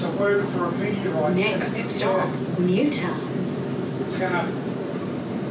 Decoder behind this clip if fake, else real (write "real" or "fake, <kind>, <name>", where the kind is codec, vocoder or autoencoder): real